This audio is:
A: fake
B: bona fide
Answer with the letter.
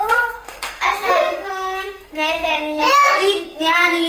A